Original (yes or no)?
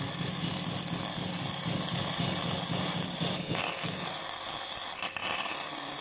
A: yes